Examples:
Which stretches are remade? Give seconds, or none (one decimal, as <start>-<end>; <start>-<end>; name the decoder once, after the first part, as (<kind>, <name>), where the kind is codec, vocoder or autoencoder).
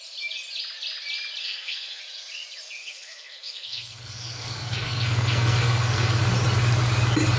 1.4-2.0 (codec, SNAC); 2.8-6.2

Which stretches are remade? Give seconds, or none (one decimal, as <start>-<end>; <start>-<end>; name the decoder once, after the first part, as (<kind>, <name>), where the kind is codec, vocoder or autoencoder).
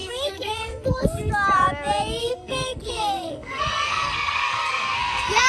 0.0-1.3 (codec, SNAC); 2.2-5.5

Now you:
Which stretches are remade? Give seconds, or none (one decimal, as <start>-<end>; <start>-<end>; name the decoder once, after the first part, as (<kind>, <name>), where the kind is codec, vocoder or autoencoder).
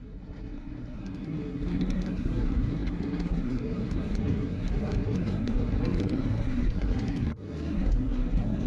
0.0-8.7 (codec, SNAC)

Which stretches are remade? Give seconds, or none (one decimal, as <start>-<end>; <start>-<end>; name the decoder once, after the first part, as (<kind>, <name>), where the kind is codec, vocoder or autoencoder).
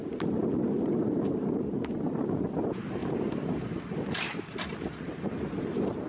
none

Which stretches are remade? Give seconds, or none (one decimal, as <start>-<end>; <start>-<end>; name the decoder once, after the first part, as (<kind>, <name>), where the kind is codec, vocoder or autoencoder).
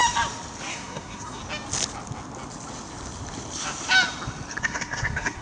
0.7-1.4 (codec, SNAC); 4.6-5.4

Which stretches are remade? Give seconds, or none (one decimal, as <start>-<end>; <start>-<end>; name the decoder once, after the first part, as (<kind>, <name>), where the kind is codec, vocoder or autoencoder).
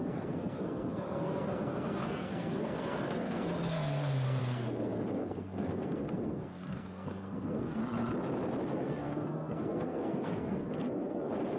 0.0-7.8 (codec, SNAC); 8.7-11.6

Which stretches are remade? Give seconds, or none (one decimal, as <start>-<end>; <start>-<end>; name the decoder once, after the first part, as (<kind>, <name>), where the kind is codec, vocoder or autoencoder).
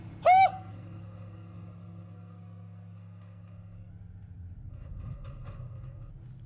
0.5-3.9 (codec, SNAC); 4.7-6.1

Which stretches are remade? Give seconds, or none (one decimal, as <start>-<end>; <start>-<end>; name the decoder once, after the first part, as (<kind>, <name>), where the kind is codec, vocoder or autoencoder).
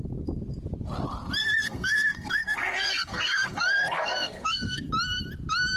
1.4-4.9 (codec, SNAC)